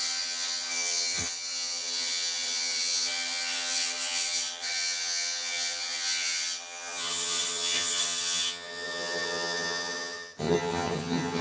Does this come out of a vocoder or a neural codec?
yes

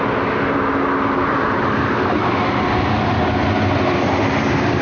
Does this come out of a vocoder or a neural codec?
no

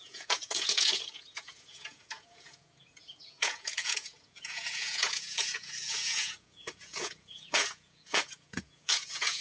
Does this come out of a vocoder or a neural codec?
yes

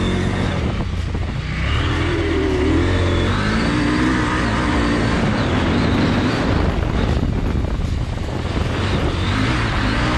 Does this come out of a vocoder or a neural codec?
no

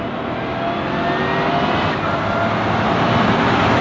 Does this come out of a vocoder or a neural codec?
no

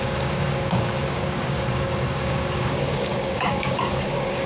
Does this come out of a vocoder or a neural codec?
yes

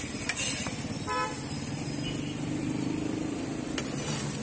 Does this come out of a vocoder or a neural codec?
yes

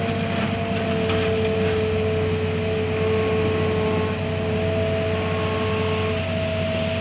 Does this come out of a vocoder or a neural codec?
no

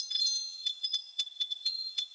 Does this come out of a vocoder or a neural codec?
yes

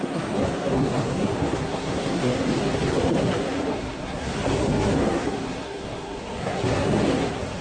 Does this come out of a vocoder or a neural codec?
yes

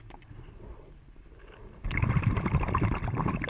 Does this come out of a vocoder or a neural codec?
no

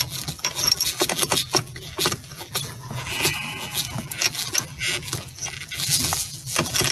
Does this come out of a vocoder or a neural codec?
yes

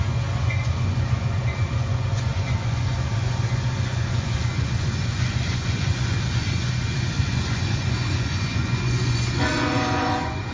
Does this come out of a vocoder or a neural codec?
yes